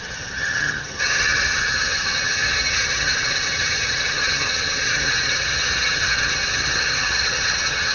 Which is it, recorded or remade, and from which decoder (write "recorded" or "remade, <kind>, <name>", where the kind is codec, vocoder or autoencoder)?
remade, vocoder, HiFi-GAN